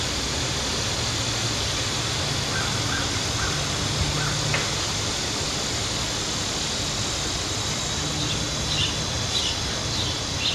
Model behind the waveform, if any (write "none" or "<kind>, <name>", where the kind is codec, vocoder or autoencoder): none